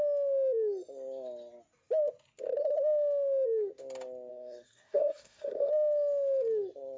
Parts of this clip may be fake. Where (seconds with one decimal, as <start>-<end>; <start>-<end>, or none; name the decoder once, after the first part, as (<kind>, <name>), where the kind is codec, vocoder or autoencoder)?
4.3-5.7 (codec, SNAC)